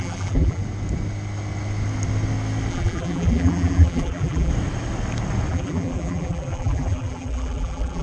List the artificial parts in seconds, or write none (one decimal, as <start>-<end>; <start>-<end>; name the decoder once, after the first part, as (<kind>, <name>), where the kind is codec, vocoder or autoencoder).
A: 0.0-0.6 (vocoder, BigVGAN v2); 2.7-4.5; 5.5-8.0